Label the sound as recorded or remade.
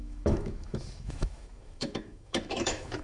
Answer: remade